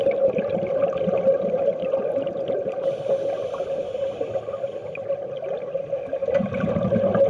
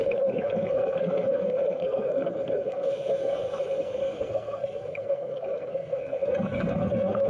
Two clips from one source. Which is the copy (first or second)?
second